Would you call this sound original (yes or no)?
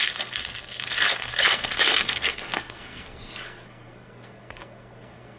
no